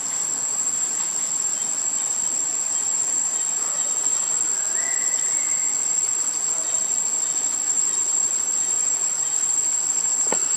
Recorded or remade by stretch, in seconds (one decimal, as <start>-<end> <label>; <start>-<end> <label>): 0.0-10.6 recorded